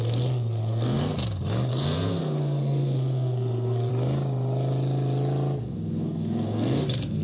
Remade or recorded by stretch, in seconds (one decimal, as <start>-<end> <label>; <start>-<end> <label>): 0.0-1.1 remade; 1.1-1.7 recorded; 1.7-3.9 remade; 3.9-5.6 recorded; 5.6-7.2 remade